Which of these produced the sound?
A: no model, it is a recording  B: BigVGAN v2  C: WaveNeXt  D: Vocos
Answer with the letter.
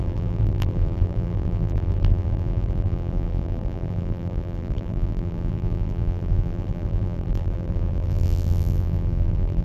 B